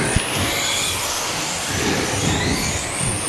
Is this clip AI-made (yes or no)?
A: no